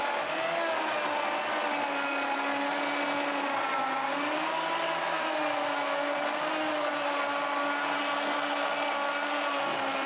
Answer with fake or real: real